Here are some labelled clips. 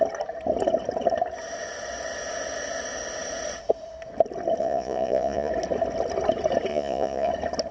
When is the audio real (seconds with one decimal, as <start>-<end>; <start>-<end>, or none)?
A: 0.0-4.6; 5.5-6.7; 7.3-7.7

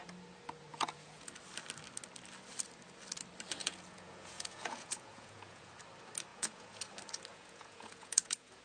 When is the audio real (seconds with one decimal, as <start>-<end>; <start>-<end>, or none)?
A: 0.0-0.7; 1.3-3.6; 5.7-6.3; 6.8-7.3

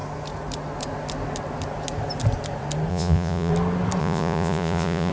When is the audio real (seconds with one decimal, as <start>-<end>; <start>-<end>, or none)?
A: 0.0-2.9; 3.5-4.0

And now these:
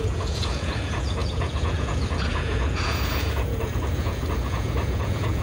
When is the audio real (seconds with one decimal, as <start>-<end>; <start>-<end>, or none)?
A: none

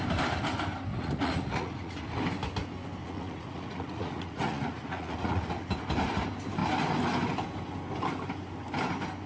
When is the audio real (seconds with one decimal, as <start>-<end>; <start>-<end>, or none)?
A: 0.0-0.9; 2.2-3.0; 5.7-9.3

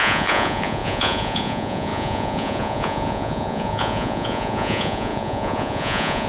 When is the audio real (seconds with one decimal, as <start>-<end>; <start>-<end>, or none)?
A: none